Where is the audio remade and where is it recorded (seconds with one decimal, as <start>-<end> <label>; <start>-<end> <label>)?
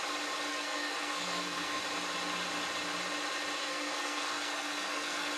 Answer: 0.0-0.5 recorded; 0.5-1.8 remade; 1.8-3.6 recorded; 3.6-5.4 remade